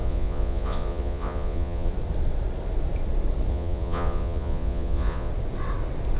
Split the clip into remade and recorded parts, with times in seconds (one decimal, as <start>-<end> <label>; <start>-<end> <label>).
0.0-1.9 remade; 1.9-3.5 recorded; 3.5-5.3 remade; 5.3-6.2 recorded